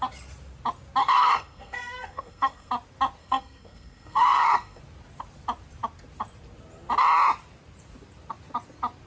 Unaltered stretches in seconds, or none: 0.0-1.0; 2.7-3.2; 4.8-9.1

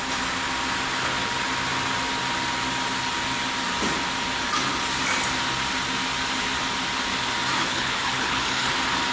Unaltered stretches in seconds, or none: 0.0-7.6; 8.7-9.1